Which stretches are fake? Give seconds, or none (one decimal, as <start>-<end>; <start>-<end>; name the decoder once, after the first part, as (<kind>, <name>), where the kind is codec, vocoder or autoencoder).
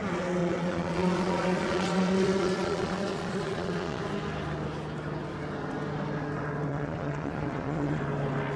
0.4-4.0 (vocoder, Vocos); 6.7-8.0